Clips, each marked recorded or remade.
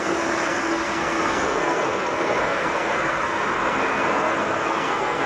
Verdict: remade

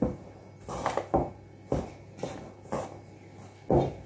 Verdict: recorded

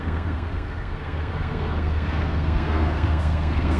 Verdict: remade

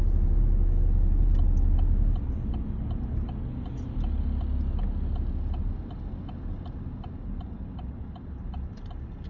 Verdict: recorded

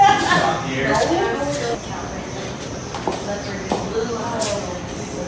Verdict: recorded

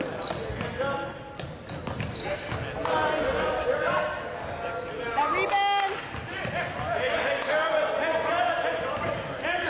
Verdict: recorded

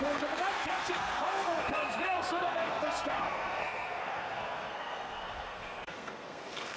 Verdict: remade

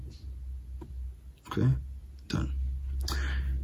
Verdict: recorded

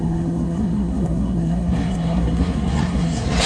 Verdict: remade